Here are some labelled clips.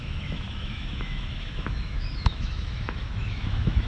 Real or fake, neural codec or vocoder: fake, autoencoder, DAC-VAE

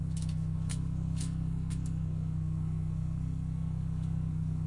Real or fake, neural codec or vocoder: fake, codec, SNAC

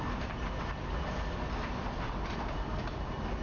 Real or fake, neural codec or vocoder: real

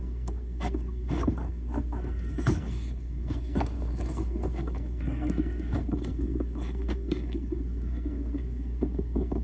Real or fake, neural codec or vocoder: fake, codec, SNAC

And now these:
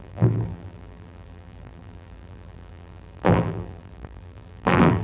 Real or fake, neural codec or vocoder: fake, vocoder, BigVGAN v2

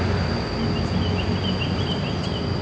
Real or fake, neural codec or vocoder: real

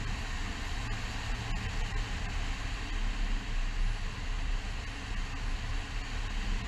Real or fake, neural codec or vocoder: real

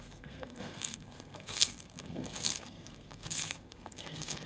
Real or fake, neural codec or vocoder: fake, codec, SNAC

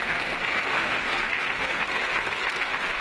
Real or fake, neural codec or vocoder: fake, codec, SNAC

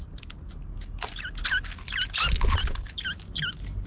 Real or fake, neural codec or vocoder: real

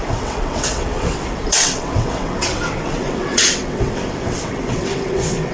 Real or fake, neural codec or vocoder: fake, vocoder, WaveNeXt